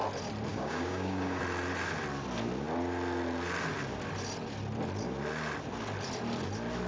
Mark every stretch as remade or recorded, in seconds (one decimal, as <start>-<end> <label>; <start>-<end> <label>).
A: 0.0-0.5 recorded; 0.5-1.4 remade; 1.4-6.9 recorded